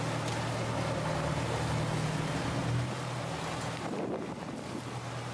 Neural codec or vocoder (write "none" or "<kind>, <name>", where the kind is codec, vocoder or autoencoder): none